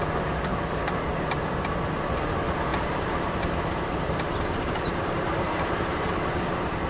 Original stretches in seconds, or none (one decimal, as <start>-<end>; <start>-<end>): 0.0-0.5; 1.6-2.7